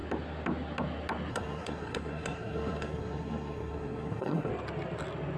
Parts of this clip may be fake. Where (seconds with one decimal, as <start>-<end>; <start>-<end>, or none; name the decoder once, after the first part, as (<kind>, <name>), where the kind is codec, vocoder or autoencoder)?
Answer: 1.3-4.5 (codec, SNAC)